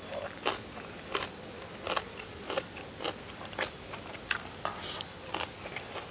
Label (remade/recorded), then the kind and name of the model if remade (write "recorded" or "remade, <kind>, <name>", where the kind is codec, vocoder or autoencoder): recorded